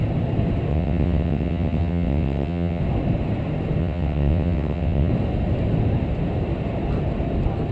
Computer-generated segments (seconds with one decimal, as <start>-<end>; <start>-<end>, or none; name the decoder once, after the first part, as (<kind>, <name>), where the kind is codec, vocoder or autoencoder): 0.7-2.8 (vocoder, WaveNeXt); 3.8-5.1